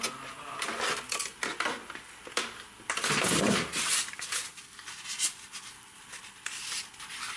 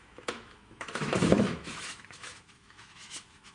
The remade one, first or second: second